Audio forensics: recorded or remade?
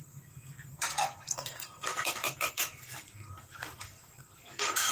remade